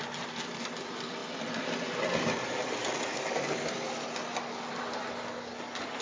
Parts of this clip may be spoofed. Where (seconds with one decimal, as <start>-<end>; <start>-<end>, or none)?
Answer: none